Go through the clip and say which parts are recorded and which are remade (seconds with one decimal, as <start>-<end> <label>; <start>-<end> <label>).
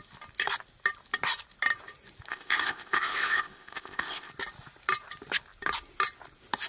0.0-2.3 recorded; 2.3-4.3 remade; 4.3-6.7 recorded